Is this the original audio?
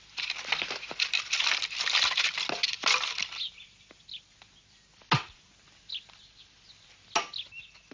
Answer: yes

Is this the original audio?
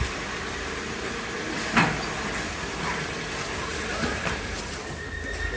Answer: yes